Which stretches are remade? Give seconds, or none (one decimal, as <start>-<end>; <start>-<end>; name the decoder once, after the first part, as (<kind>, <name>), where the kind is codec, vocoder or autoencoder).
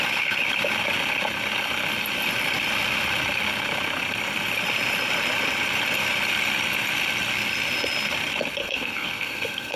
8.6-9.8 (codec, SNAC)